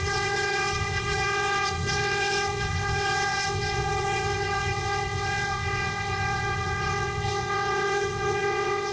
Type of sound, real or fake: fake